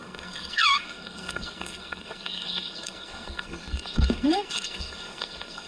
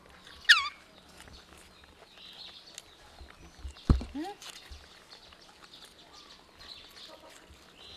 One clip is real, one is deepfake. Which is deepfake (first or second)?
first